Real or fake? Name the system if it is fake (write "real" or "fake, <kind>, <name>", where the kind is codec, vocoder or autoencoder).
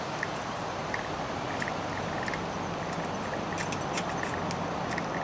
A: real